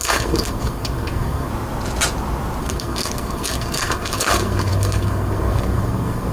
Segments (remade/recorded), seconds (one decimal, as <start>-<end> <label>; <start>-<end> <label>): 0.0-1.5 remade; 1.5-2.6 recorded; 2.6-6.3 remade